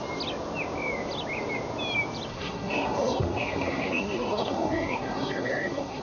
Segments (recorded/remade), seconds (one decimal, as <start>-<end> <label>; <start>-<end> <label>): 0.0-2.3 recorded; 2.3-6.0 remade